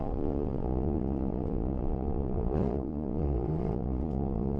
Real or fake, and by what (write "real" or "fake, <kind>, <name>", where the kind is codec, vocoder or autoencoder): fake, vocoder, Vocos